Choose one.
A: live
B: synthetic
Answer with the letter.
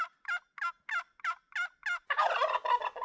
A